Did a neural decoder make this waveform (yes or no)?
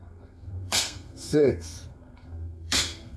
yes